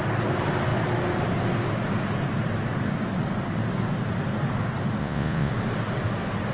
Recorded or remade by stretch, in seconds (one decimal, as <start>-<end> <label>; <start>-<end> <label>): 0.0-5.0 recorded; 5.0-5.5 remade; 5.5-6.5 recorded